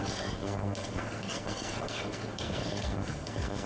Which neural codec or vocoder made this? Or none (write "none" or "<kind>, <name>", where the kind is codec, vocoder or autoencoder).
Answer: codec, SNAC